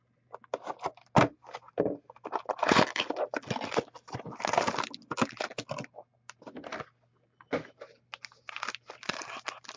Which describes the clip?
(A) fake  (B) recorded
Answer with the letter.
B